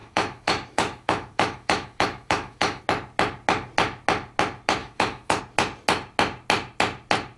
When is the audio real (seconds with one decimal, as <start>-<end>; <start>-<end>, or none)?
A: 2.8-4.8; 5.4-7.4